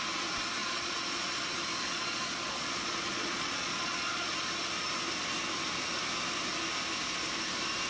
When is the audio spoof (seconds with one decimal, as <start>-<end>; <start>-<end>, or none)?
0.6-1.4; 1.9-4.3